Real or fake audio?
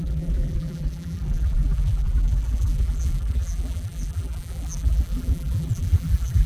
fake